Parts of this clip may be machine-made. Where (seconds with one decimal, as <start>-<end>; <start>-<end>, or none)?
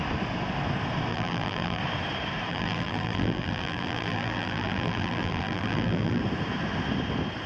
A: 1.1-1.8; 2.5-6.2